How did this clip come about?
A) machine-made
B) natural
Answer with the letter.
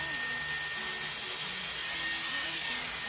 B